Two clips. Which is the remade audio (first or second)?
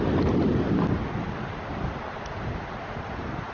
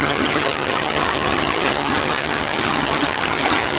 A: second